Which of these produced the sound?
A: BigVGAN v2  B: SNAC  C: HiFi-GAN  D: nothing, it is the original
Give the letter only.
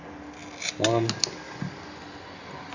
D